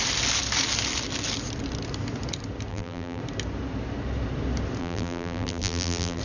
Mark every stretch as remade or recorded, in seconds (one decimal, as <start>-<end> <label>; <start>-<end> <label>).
0.0-2.7 recorded; 2.7-3.2 remade; 3.2-4.8 recorded; 4.8-6.2 remade

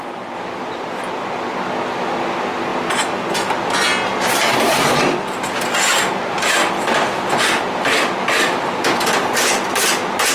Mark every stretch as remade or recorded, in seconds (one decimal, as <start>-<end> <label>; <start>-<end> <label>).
0.0-10.3 recorded